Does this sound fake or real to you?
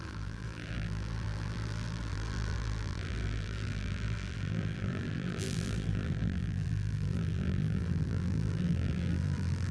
fake